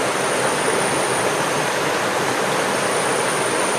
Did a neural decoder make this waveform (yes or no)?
no